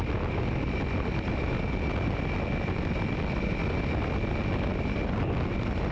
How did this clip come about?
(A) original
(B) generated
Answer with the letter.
A